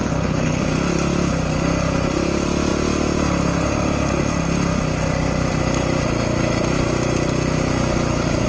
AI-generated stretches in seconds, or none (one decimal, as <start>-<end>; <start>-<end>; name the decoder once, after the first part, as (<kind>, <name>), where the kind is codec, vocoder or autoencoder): 0.0-0.6 (codec, HILCodec)